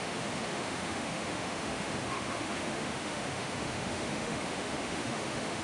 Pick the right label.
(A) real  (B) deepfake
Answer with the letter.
B